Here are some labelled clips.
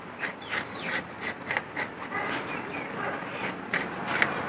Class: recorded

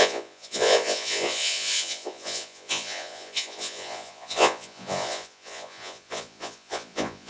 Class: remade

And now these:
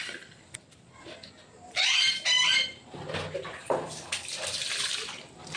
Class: recorded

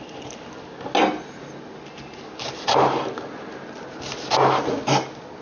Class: recorded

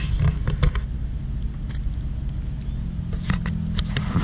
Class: recorded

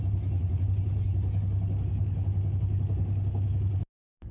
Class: recorded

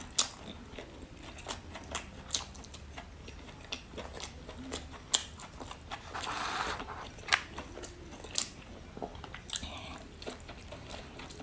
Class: recorded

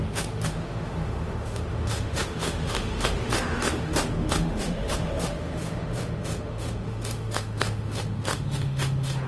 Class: remade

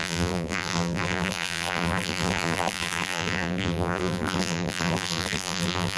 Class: remade